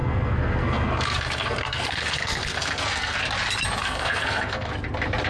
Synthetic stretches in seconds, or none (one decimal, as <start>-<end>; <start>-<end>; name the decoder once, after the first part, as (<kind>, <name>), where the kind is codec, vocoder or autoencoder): 0.0-3.2 (codec, SNAC); 3.8-4.7